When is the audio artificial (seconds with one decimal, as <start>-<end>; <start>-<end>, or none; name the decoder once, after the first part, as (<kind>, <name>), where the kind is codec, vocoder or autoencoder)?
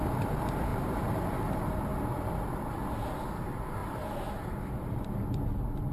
3.8-5.0 (vocoder, BigVGAN v2)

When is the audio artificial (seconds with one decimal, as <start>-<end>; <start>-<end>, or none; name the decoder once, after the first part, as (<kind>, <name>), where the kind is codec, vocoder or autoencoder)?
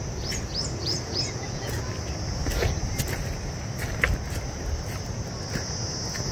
0.8-1.9 (vocoder, Vocos)